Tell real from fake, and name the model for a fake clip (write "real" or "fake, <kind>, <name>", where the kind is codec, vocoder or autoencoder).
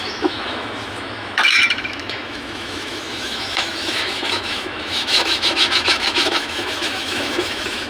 fake, autoencoder, DAC-VAE